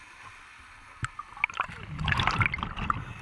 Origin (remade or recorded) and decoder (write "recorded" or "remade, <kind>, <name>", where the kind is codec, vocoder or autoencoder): recorded